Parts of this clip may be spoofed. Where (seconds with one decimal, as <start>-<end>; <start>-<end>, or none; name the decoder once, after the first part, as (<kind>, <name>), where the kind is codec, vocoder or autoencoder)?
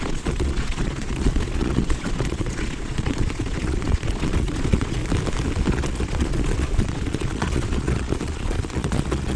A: 0.0-5.0 (vocoder, Vocos); 5.7-9.4